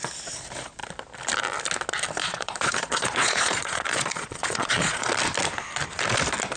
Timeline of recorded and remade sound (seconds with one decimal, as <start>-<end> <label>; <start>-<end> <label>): 0.0-2.2 recorded; 2.2-5.1 remade; 5.1-6.6 recorded